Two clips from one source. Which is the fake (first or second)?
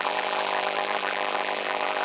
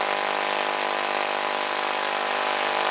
first